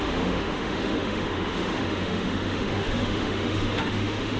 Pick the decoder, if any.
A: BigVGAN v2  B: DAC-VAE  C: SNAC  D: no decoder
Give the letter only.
B